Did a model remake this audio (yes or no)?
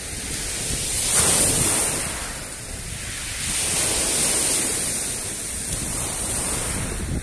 no